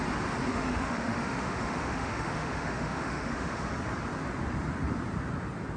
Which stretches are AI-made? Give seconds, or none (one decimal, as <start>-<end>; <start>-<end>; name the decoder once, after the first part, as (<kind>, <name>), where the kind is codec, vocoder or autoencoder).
0.5-3.7 (autoencoder, DAC-VAE)